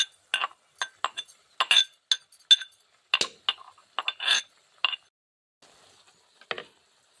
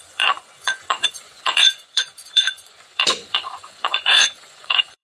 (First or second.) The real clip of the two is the first